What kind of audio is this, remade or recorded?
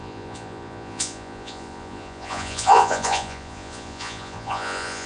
remade